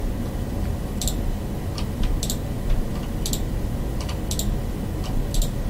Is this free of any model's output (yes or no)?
yes